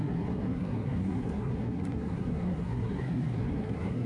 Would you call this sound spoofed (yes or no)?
yes